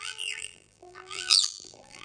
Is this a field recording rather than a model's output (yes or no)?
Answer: no